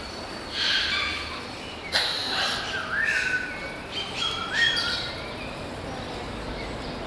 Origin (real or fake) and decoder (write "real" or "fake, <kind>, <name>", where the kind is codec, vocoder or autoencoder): real